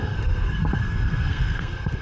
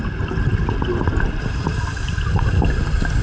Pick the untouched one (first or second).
second